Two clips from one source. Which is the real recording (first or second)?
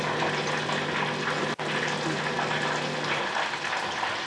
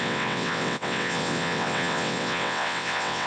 first